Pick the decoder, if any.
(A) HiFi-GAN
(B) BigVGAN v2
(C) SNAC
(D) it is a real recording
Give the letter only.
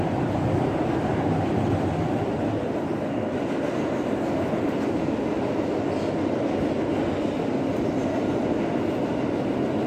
D